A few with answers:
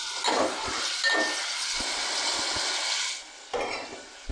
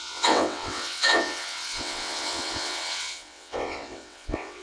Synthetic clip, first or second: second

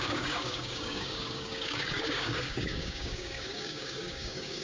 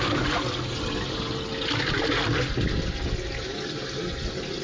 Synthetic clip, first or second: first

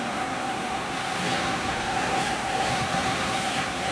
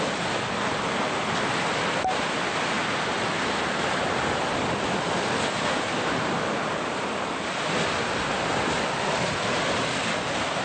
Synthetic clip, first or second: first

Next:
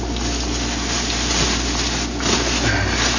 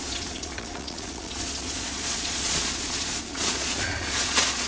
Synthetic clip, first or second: second